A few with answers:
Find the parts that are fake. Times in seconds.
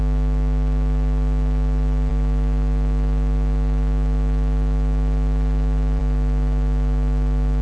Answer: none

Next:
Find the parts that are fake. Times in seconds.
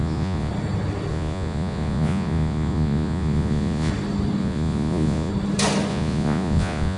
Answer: 0.0-0.5 (vocoder, Vocos); 1.1-3.9; 4.4-5.3; 5.9-7.0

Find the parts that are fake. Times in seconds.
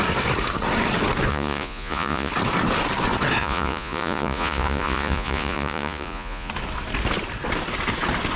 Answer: 1.3-2.3 (vocoder, Vocos); 3.4-6.5